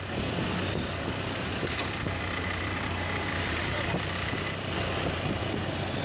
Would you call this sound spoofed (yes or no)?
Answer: no